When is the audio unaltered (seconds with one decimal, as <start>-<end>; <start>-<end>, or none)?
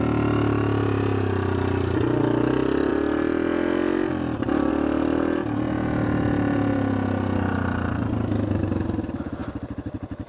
0.0-10.3